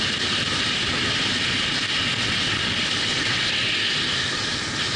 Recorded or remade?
recorded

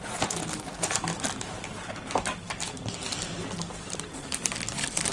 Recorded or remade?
recorded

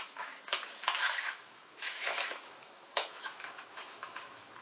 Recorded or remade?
remade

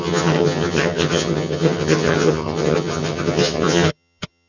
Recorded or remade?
remade